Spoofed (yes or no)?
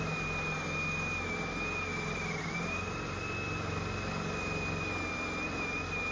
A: no